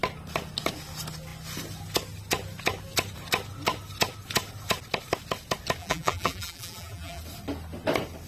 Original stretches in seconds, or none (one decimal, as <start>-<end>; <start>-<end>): 0.0-5.8; 7.2-8.3